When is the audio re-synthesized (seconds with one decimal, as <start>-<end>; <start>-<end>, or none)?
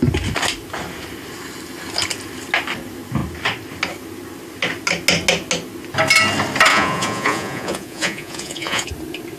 6.7-8.9